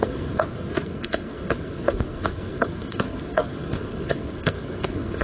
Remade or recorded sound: remade